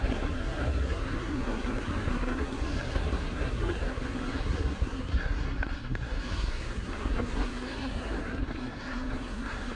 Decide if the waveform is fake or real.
fake